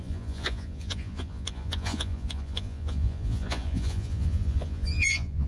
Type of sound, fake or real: fake